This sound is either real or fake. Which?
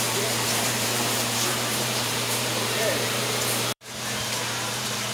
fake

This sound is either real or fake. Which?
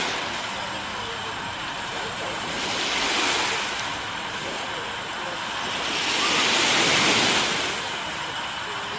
real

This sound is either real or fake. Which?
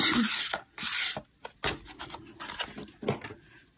real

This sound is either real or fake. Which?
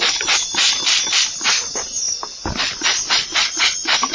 real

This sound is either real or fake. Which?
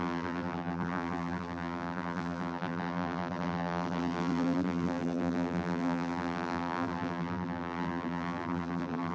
fake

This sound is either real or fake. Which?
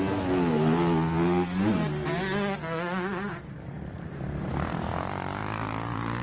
real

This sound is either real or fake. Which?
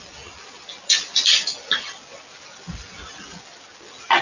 real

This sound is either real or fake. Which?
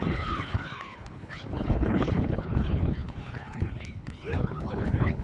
fake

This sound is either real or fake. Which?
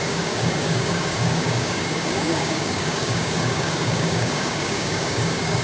fake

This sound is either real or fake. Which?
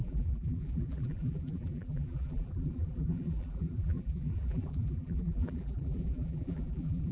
fake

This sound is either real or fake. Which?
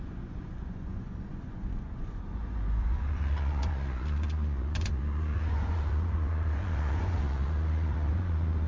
fake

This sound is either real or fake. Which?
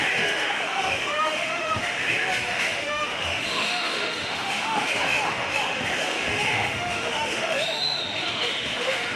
fake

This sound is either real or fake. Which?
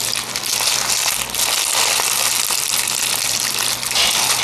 real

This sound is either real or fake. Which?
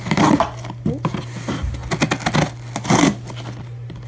real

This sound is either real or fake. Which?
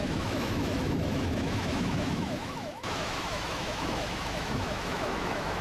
fake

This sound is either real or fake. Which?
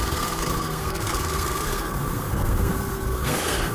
fake